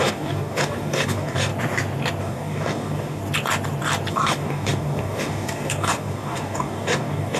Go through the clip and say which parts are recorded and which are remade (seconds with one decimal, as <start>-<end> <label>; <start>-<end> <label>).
0.0-1.5 remade; 1.5-2.2 recorded; 2.2-3.2 remade; 3.2-4.1 recorded; 4.1-7.4 remade